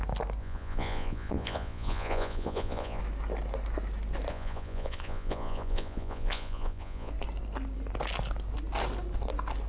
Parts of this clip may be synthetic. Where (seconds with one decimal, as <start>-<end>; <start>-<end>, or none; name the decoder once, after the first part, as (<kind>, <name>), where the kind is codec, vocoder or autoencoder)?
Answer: 0.4-3.0 (vocoder, Vocos); 4.3-7.1